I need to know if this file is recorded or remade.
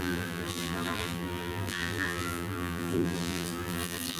remade